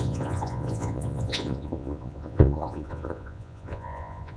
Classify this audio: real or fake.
fake